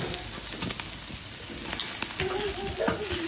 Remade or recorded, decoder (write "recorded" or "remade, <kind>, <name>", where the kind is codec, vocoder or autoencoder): recorded